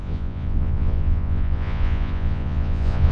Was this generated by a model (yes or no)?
yes